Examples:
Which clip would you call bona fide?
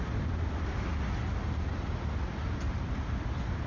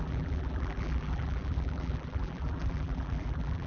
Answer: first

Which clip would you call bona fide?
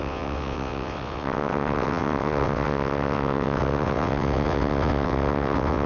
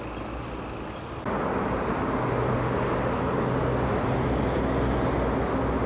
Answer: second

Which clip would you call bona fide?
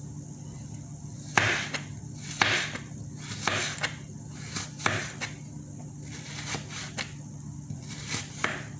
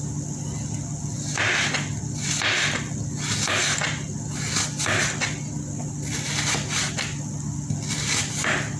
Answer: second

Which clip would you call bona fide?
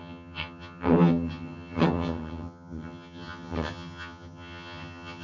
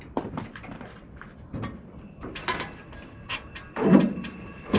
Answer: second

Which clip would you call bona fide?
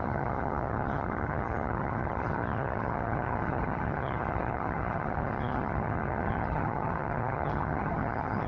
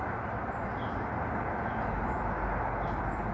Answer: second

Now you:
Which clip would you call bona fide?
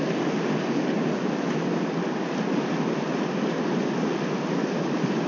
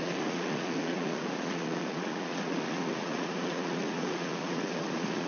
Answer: first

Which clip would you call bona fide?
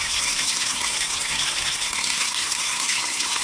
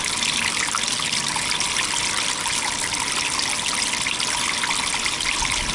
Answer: second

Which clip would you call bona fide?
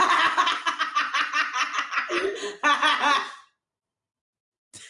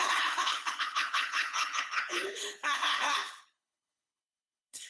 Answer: first